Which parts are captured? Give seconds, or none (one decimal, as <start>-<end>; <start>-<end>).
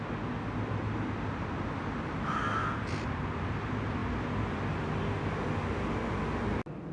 0.0-6.9